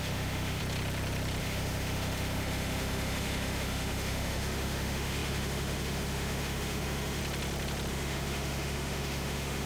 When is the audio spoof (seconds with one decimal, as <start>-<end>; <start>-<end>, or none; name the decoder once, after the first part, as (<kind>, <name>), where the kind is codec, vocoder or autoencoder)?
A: 0.0-0.6 (autoencoder, DAC-VAE); 1.4-7.2; 7.9-9.7